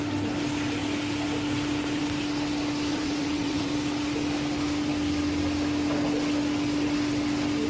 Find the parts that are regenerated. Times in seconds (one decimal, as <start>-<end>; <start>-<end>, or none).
2.9-3.7